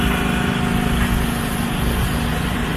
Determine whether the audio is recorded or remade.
recorded